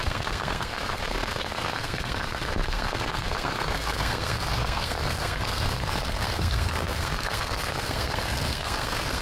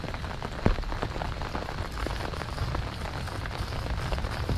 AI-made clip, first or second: first